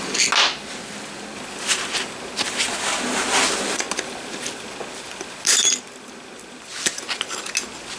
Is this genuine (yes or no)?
yes